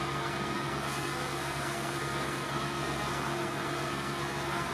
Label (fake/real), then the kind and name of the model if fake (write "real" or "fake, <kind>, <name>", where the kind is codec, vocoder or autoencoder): fake, codec, SNAC